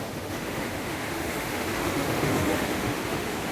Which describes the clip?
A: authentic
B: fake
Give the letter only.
B